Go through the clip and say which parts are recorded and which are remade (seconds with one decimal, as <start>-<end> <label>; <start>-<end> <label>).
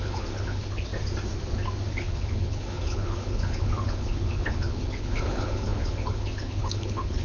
0.0-0.9 remade; 0.9-1.9 recorded; 1.9-7.2 remade